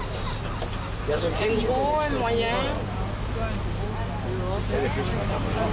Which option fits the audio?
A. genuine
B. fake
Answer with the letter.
A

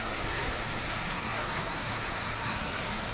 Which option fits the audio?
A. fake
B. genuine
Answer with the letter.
A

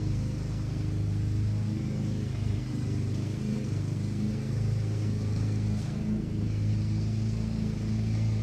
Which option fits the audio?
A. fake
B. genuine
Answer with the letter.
A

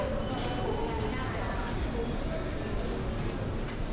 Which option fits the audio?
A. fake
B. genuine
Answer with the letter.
B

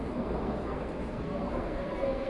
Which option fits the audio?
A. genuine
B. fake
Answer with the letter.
B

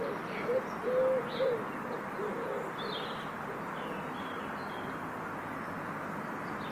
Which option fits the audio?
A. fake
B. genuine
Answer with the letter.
B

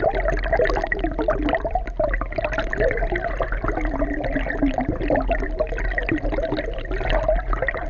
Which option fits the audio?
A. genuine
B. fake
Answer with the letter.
A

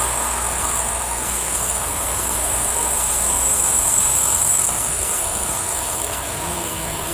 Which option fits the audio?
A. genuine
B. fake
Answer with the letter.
B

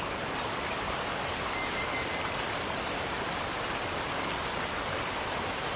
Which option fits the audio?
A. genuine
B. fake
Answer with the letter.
A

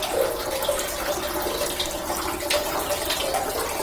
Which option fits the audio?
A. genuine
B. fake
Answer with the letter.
A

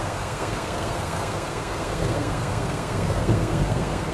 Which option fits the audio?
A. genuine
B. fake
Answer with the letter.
B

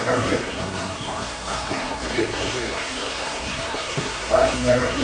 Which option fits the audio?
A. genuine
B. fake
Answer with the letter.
B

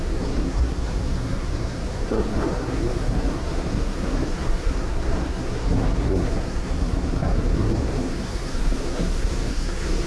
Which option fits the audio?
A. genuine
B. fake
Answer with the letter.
B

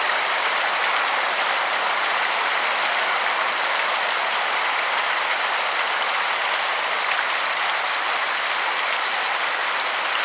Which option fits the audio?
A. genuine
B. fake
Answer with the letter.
A